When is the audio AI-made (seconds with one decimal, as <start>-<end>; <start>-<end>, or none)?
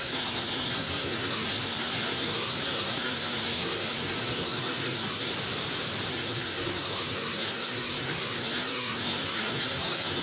0.0-5.3; 6.1-10.2